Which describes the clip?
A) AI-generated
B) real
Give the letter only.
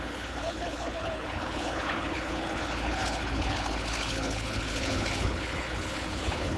A